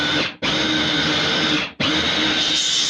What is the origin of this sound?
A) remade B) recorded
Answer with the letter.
B